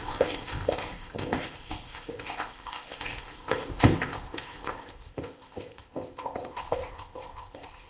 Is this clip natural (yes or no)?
no